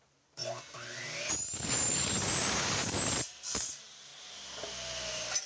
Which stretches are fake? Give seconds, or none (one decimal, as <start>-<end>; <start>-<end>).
0.0-0.4; 1.3-4.1; 5.1-5.5